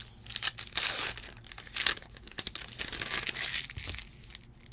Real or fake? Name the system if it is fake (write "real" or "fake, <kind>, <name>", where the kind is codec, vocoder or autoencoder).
real